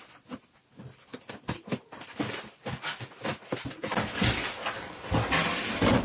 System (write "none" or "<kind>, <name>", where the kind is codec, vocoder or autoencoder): none